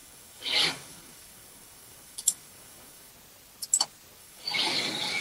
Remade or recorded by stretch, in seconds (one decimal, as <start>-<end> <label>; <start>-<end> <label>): 0.0-3.1 remade; 3.1-4.2 recorded; 4.2-5.2 remade